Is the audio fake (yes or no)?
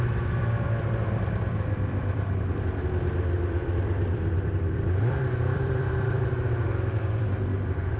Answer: yes